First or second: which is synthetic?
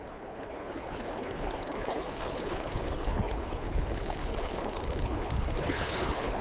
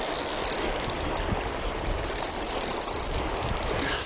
first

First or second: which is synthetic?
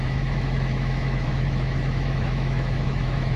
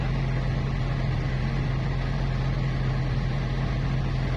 first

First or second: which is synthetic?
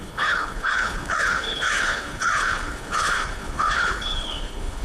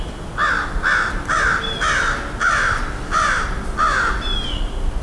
first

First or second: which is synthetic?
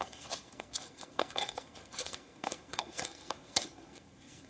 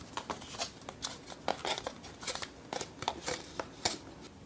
first